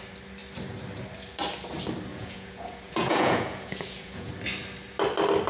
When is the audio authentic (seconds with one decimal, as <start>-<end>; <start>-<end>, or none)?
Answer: 0.0-2.1; 4.3-5.5